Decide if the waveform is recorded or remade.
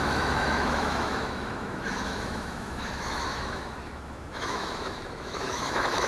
remade